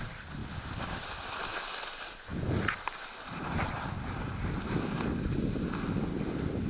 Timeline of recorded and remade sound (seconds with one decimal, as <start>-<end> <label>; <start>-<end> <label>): 0.0-0.4 recorded; 0.4-1.5 remade; 1.5-6.7 recorded

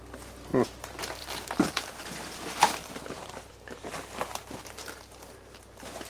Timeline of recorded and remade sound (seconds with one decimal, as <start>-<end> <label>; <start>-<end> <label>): 0.0-0.5 recorded; 0.5-1.9 remade; 1.9-2.8 recorded; 2.8-3.9 remade; 3.9-4.4 recorded; 4.4-6.1 remade

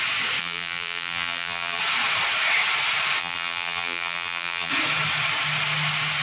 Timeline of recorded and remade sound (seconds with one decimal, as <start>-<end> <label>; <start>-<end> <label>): 0.0-0.4 recorded; 0.4-1.8 remade; 1.8-3.2 recorded; 3.2-4.7 remade; 4.7-6.2 recorded

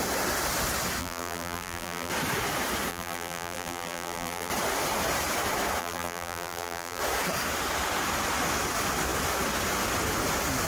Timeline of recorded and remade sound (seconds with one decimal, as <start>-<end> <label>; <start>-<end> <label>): 0.0-1.0 recorded; 1.0-2.1 remade; 2.1-2.9 recorded; 2.9-4.5 remade; 4.5-5.8 recorded; 5.8-7.0 remade; 7.0-10.7 recorded

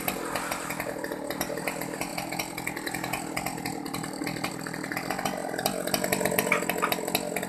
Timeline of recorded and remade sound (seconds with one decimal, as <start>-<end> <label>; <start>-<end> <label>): 0.0-7.5 recorded

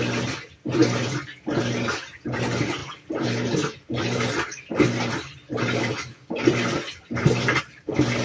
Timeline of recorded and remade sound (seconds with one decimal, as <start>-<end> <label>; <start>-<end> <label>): 0.0-2.8 recorded; 2.8-7.6 remade; 7.6-8.2 recorded

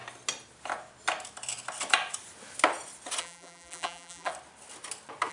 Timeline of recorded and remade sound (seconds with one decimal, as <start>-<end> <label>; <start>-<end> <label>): 0.0-3.2 recorded; 3.2-4.3 remade; 4.3-5.3 recorded

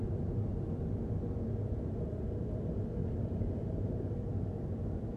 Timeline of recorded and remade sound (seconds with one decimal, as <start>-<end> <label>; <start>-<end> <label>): 0.0-0.5 remade; 0.5-2.0 recorded; 2.0-5.2 remade